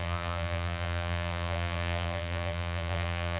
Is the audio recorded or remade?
remade